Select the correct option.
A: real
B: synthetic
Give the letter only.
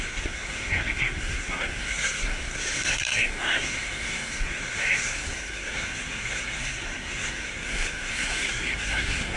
B